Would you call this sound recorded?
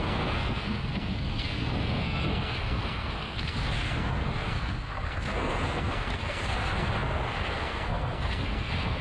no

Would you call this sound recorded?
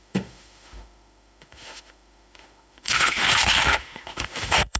no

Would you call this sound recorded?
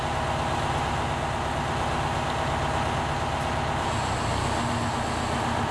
yes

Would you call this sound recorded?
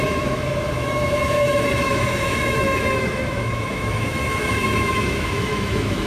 no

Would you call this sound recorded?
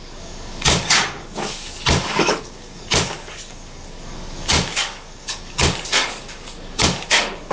no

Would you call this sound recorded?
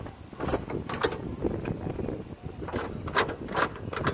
yes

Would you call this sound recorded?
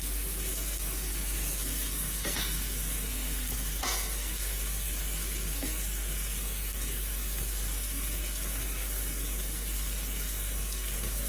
no